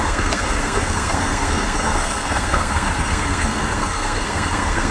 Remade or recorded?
remade